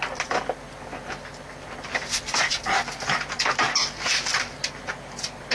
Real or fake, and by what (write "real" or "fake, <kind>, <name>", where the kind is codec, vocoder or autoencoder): real